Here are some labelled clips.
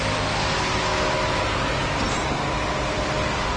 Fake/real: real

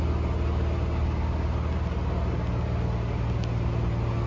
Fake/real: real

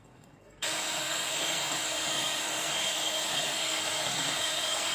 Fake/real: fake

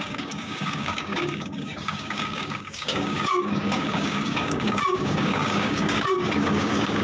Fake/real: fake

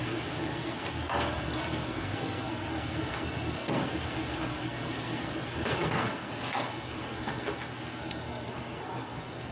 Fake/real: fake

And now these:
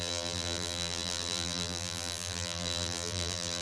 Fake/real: fake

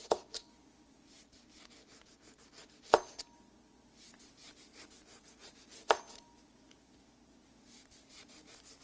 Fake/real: real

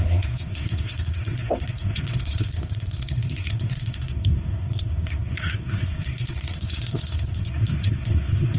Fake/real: fake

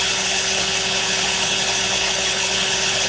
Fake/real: fake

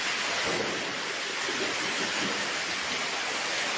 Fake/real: real